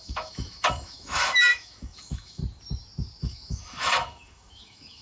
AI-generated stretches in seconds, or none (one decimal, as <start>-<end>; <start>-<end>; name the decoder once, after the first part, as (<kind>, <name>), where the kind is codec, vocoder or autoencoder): 0.0-2.4 (autoencoder, DAC-VAE); 3.2-5.0